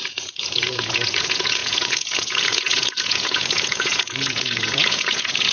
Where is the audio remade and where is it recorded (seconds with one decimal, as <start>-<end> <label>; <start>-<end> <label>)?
0.0-5.5 remade